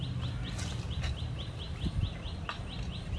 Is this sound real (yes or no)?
yes